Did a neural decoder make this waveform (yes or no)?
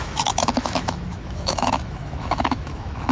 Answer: yes